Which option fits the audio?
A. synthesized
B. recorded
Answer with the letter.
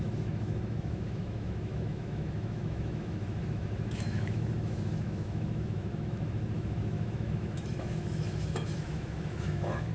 A